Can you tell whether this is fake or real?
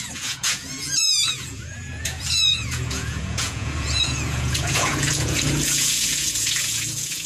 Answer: fake